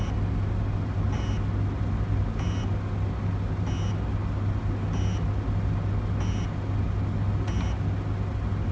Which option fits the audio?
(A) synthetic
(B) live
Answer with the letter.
B